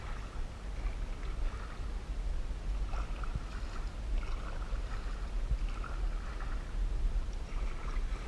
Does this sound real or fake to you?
real